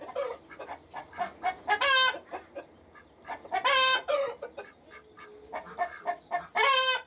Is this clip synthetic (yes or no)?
no